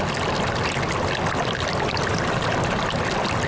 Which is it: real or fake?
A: real